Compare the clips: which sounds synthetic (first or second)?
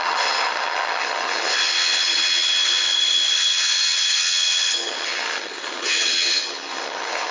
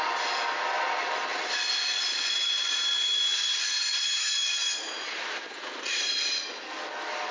first